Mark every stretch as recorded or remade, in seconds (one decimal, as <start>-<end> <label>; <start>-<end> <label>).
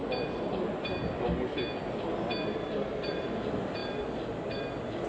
0.0-5.1 recorded